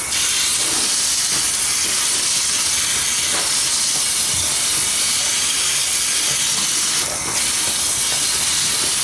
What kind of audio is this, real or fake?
real